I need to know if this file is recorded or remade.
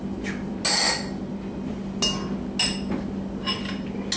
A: recorded